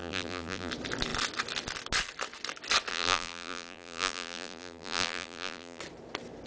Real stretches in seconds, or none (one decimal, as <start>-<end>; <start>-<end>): 0.7-2.9; 5.8-6.5